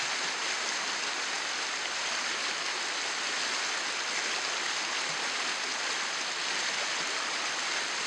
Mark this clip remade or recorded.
recorded